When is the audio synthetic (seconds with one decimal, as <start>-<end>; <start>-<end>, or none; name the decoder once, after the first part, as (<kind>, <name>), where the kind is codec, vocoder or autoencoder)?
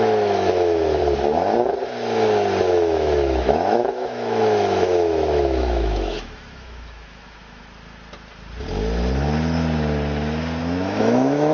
0.0-1.0 (autoencoder, DAC-VAE); 2.6-7.6; 10.6-11.5